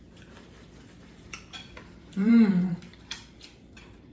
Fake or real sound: fake